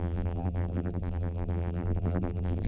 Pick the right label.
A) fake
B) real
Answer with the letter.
A